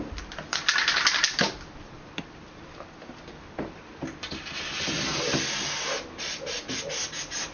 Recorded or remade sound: recorded